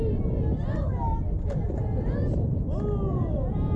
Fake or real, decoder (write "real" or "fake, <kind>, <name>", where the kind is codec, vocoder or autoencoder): real